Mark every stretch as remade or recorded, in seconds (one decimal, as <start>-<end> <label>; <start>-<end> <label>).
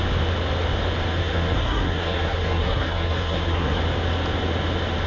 0.0-1.2 recorded; 1.2-3.8 remade; 3.8-5.1 recorded